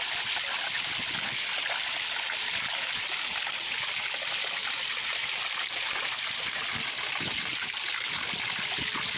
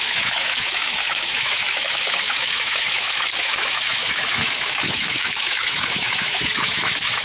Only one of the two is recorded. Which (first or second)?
first